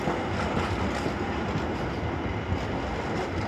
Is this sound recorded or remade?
recorded